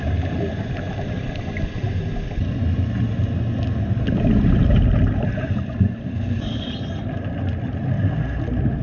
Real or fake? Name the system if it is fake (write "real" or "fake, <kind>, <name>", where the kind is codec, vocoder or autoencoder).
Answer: real